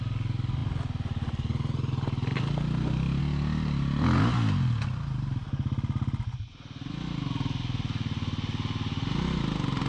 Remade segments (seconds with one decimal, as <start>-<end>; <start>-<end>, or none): none